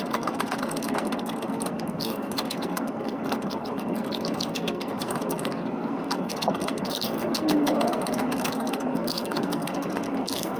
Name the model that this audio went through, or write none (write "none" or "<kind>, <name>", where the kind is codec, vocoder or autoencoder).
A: codec, SNAC